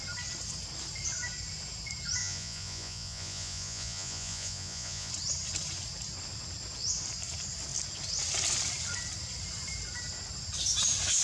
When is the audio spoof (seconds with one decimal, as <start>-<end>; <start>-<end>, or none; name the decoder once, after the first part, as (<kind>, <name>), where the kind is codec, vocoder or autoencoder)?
2.2-5.1 (vocoder, Vocos)